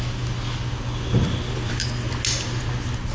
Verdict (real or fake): real